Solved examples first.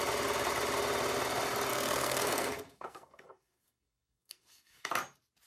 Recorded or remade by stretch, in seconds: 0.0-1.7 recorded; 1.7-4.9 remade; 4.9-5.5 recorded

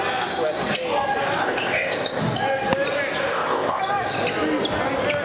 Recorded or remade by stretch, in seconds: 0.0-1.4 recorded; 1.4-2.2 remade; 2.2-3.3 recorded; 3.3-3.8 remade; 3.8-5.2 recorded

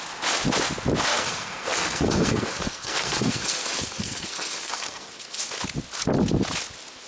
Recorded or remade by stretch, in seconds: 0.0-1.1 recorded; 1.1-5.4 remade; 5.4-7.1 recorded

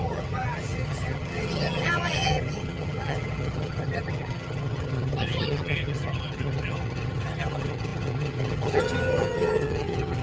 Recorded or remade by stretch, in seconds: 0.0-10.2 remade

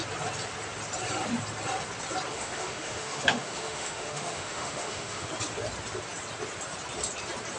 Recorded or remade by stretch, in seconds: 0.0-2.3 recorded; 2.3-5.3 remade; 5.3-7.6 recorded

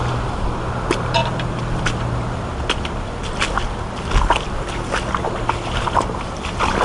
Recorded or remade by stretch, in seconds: 0.0-6.8 recorded